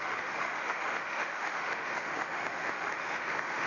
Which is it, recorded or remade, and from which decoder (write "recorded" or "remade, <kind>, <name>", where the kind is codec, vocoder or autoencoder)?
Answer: remade, autoencoder, DAC-VAE